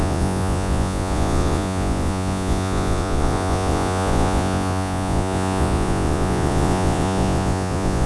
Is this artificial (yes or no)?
yes